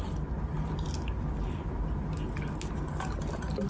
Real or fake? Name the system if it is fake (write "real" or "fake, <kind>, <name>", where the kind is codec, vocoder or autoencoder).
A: real